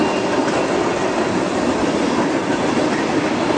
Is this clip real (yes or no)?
yes